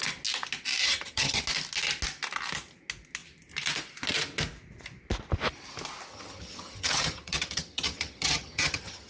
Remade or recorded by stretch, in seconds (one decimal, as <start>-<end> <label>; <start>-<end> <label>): 0.0-0.8 recorded; 0.8-1.4 remade; 1.4-6.1 recorded; 6.1-9.1 remade